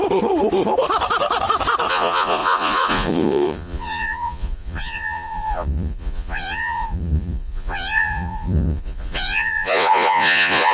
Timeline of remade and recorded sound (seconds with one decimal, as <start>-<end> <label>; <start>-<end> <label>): 0.0-1.9 recorded; 1.9-10.7 remade